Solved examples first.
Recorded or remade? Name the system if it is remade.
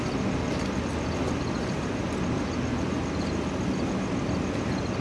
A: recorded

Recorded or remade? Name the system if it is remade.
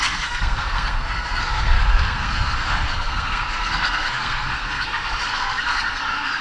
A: remade, codec, SNAC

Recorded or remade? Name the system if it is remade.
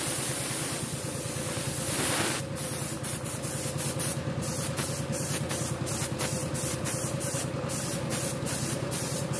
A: recorded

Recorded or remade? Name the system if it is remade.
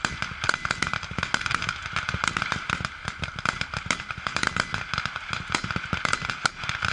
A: recorded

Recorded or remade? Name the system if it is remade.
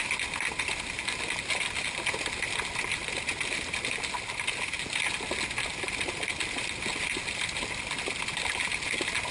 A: recorded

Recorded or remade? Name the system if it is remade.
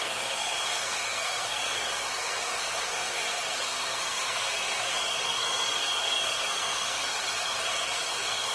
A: remade, codec, SNAC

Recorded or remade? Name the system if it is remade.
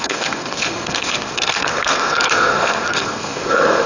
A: remade, codec, SNAC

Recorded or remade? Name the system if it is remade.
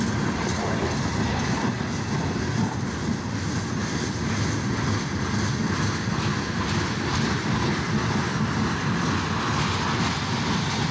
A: recorded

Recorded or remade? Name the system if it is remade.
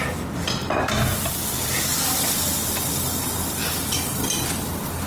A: recorded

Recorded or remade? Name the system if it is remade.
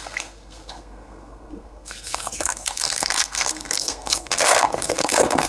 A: remade, codec, SNAC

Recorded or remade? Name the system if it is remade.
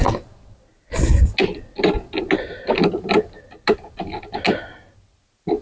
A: recorded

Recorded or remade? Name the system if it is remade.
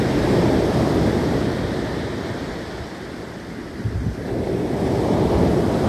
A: recorded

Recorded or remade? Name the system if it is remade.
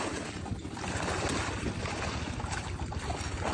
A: recorded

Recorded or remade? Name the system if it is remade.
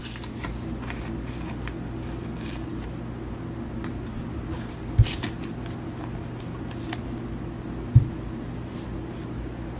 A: recorded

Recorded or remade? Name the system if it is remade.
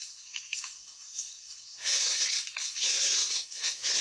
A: remade, codec, SNAC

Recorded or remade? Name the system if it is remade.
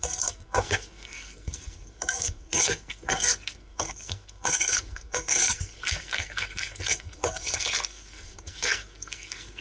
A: remade, codec, SNAC